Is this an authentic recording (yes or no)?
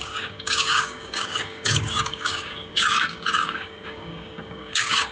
no